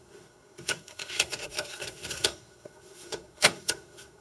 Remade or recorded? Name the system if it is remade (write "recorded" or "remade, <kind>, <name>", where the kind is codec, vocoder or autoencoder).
remade, codec, SNAC